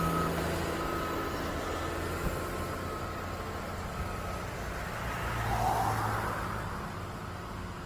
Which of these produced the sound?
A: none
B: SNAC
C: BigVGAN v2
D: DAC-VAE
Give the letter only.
A